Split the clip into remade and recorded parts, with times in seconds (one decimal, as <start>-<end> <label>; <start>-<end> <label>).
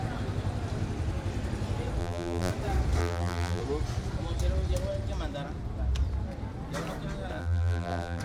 0.0-2.0 recorded; 2.0-2.5 remade; 2.5-3.0 recorded; 3.0-3.6 remade; 3.6-7.4 recorded; 7.4-8.2 remade